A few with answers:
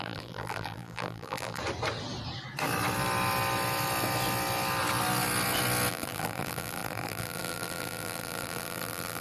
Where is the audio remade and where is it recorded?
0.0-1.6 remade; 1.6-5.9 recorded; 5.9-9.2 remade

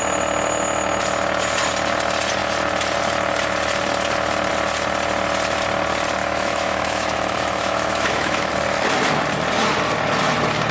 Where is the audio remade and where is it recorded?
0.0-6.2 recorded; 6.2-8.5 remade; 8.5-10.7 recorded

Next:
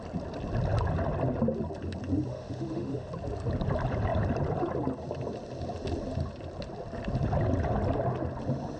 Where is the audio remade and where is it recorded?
0.0-2.3 recorded; 2.3-3.1 remade; 3.1-8.8 recorded

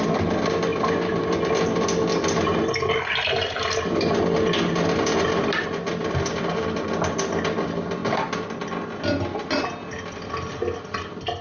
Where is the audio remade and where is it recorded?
0.0-11.4 recorded

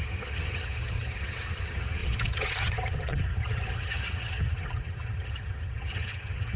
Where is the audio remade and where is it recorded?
0.0-6.6 remade